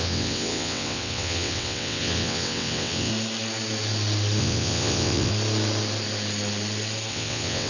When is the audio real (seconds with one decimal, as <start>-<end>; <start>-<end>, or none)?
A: 3.1-4.4; 5.3-7.1